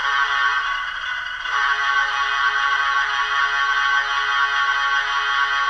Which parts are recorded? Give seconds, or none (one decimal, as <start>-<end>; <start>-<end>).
3.4-5.7